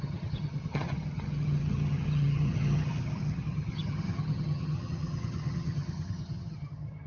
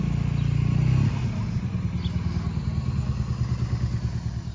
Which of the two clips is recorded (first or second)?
second